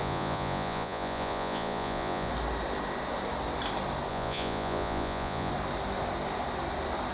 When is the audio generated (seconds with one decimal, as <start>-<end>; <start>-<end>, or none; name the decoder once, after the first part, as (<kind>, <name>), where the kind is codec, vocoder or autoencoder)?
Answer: 0.0-2.3 (vocoder, Vocos); 4.1-5.5